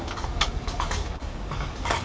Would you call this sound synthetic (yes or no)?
yes